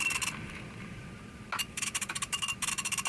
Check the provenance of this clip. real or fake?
real